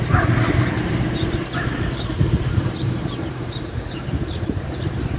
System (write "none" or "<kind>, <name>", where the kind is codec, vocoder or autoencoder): vocoder, BigVGAN v2